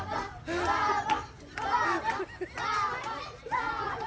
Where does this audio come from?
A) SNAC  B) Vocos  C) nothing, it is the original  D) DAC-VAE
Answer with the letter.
C